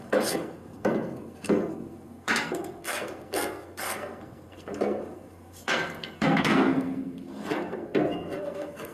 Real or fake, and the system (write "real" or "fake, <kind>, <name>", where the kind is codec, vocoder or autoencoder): fake, codec, SNAC